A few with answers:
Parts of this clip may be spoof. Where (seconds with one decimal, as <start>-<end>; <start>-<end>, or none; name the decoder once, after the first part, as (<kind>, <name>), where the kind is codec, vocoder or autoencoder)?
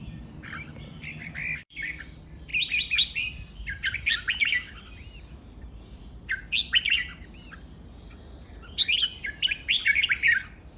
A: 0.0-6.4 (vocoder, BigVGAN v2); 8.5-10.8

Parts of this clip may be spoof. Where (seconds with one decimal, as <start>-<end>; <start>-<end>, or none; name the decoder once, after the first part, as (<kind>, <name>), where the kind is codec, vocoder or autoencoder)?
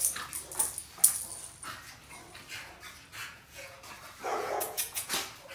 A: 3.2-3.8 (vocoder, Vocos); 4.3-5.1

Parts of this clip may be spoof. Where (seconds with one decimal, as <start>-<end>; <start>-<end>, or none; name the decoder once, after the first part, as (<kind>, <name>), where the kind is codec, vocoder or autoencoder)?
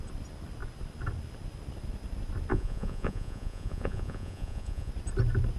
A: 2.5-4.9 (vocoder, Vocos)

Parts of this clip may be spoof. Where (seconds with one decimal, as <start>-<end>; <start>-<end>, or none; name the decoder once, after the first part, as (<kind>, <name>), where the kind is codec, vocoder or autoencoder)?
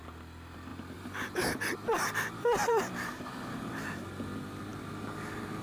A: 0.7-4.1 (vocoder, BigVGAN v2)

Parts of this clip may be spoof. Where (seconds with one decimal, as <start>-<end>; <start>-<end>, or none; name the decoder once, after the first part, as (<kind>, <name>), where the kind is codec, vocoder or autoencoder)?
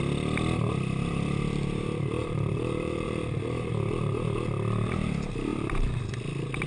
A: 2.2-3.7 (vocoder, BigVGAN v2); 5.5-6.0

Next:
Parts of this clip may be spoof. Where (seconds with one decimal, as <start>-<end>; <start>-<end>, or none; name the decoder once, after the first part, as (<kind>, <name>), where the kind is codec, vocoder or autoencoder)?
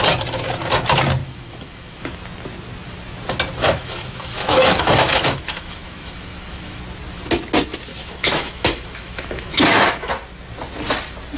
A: 1.2-2.0 (autoencoder, DAC-VAE); 3.6-6.8; 7.9-10.1